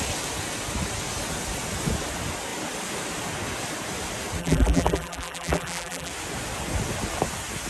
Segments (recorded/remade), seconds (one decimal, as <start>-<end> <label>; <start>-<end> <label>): 0.0-4.4 recorded; 4.4-6.1 remade; 6.1-7.7 recorded